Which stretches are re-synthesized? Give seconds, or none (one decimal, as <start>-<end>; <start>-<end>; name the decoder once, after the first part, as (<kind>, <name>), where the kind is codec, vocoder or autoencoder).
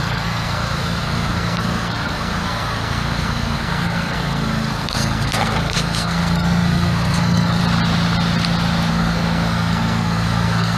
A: 0.0-7.6 (codec, SNAC); 8.9-10.8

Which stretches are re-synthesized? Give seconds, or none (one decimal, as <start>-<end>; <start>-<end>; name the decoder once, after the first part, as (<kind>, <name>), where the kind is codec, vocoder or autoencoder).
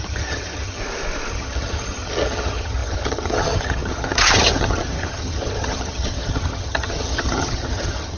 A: 0.0-0.8 (vocoder, HiFi-GAN); 1.3-8.2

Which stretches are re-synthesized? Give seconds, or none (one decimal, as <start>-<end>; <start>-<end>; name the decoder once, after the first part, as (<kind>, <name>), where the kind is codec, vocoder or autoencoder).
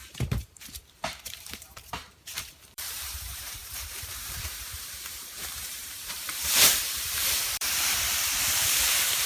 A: 0.0-9.3 (vocoder, BigVGAN v2)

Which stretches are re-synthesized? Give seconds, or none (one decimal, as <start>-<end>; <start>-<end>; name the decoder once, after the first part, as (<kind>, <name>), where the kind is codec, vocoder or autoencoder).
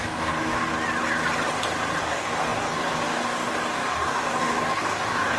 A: 0.0-0.7 (codec, DAC); 2.0-5.4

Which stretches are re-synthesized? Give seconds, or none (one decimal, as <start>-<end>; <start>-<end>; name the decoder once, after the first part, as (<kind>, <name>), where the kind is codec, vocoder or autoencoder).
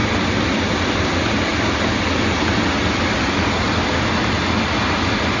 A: none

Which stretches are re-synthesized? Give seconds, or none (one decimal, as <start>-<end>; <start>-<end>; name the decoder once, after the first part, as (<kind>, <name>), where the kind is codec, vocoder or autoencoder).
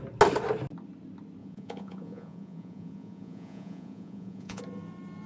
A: 1.4-4.6 (vocoder, Vocos)